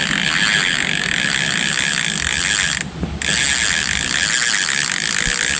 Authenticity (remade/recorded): recorded